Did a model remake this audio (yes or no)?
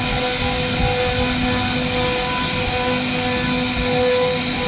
no